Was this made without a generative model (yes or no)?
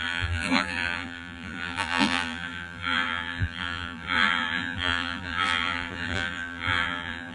no